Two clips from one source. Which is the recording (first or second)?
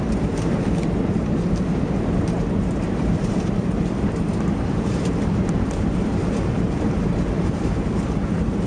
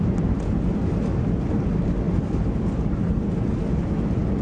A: second